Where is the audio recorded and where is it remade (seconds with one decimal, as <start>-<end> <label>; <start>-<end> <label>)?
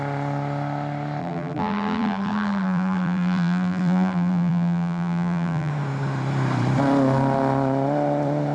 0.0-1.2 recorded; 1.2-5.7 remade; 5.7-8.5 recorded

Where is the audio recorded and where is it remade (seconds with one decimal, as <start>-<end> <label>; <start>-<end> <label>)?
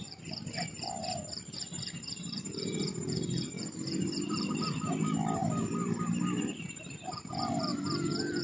0.0-7.7 remade; 7.7-8.4 recorded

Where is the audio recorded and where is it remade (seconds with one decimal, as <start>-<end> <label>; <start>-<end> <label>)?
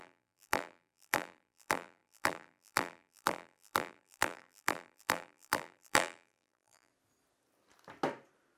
0.0-6.9 remade; 6.9-8.6 recorded